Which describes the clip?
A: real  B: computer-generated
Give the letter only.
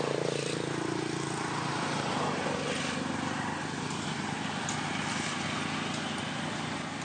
A